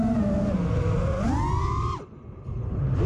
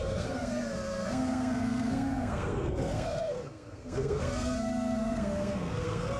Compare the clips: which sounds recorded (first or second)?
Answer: first